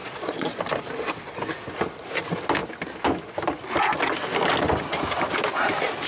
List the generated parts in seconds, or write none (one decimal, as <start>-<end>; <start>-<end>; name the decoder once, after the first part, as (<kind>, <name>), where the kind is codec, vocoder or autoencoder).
0.0-0.6 (vocoder, Vocos)